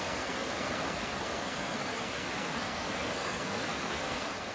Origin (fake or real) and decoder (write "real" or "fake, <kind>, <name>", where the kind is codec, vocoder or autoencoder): fake, codec, SNAC